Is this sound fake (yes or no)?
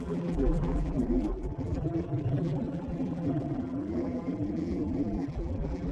yes